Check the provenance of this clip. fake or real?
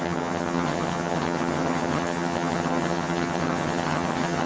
fake